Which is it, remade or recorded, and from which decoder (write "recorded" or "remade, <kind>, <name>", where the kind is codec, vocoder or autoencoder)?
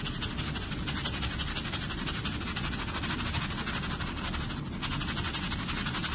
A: recorded